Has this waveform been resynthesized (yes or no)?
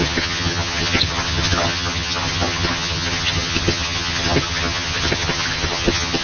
yes